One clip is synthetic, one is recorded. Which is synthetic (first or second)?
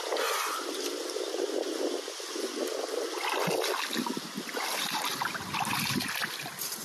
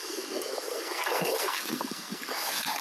second